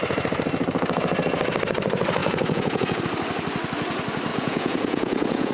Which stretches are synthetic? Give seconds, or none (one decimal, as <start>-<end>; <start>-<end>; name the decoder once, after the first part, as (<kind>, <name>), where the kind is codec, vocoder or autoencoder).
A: 2.2-3.0 (vocoder, Vocos); 4.3-5.5